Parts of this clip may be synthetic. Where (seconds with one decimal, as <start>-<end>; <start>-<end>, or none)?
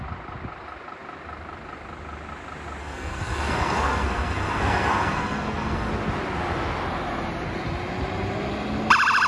2.8-5.9